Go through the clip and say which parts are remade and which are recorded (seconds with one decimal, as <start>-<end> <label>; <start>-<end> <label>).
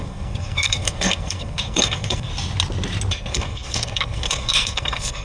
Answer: 0.0-2.3 remade; 2.3-3.1 recorded; 3.1-5.2 remade